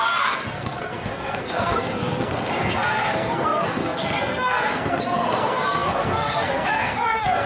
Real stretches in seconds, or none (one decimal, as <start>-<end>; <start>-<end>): none